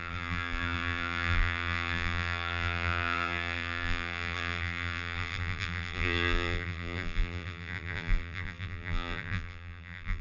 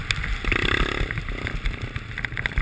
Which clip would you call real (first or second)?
second